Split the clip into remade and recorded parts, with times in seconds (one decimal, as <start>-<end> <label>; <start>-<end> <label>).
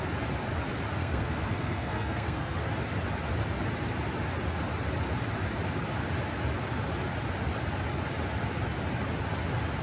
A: 0.0-1.0 recorded; 1.0-2.7 remade; 2.7-9.8 recorded